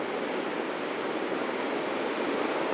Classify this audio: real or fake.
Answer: real